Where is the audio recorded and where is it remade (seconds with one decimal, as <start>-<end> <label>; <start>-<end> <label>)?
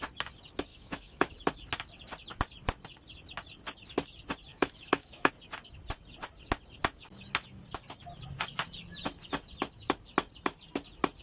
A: 0.0-0.7 recorded; 0.7-1.3 remade; 1.3-4.5 recorded; 4.5-5.3 remade; 5.3-11.2 recorded